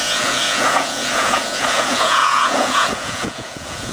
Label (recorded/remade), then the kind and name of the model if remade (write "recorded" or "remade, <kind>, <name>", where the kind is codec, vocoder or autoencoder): remade, vocoder, Vocos